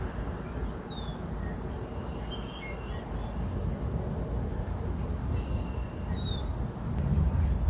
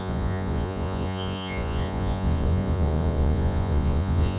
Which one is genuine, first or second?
first